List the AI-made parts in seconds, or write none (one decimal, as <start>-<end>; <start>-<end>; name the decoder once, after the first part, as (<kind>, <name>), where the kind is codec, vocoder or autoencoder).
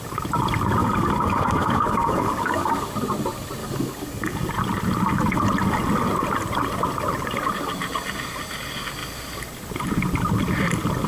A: 0.8-2.9 (codec, DAC); 3.6-4.5